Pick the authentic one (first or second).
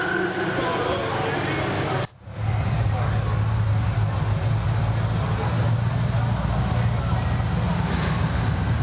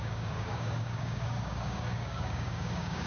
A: first